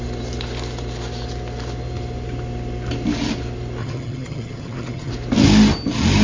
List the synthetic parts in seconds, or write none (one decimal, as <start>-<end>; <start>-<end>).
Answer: 3.8-5.1